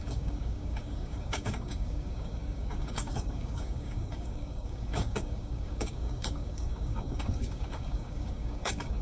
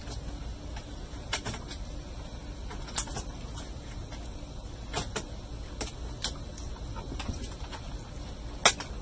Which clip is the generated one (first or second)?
first